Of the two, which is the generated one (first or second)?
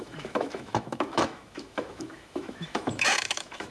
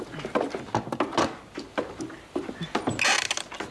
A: first